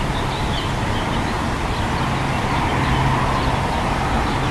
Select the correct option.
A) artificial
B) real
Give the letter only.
B